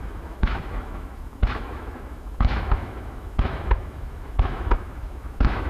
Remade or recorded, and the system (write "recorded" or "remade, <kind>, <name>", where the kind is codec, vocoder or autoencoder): remade, autoencoder, DAC-VAE